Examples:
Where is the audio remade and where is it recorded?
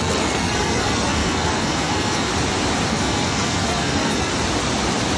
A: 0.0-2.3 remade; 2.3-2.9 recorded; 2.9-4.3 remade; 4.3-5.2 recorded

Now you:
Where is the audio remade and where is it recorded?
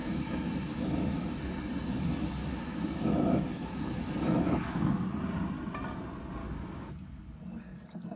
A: 0.0-1.4 remade; 1.4-2.4 recorded; 2.4-5.1 remade; 5.1-6.4 recorded; 6.4-6.9 remade; 6.9-8.2 recorded